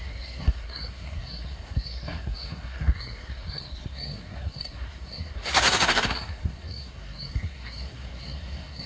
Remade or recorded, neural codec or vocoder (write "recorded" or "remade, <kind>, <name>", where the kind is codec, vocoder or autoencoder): remade, codec, SNAC